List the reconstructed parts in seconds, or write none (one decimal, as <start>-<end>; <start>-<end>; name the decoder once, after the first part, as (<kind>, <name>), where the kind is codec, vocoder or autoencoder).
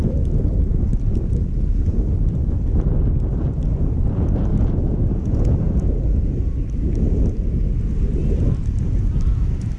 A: 4.5-6.0 (vocoder, Vocos)